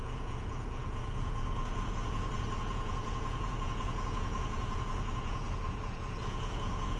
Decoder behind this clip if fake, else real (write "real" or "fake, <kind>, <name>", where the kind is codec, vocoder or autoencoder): fake, vocoder, Vocos